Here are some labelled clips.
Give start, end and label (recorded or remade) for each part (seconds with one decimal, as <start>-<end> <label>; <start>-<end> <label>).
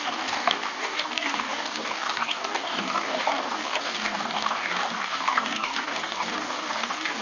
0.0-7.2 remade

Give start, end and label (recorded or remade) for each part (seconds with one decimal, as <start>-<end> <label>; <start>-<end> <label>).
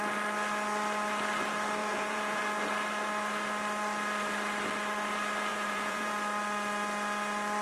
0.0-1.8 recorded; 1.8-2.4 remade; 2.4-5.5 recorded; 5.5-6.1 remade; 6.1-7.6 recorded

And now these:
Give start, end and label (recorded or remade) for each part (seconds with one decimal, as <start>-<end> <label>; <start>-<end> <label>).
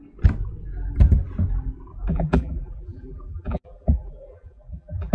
0.0-2.1 recorded; 2.1-5.1 remade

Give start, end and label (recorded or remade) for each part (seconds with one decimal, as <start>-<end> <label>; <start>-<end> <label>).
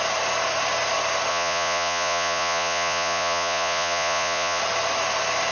0.0-1.3 recorded; 1.3-4.6 remade; 4.6-5.5 recorded